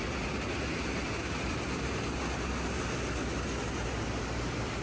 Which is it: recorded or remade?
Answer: recorded